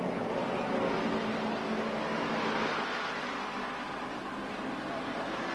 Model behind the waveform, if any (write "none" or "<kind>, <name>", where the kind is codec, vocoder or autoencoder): none